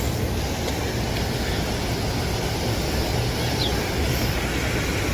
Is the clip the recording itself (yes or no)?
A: yes